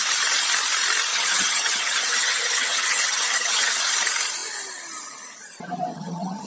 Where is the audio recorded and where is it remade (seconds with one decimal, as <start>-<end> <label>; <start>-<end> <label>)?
0.0-1.1 recorded; 1.1-3.8 remade; 3.8-5.9 recorded; 5.9-6.5 remade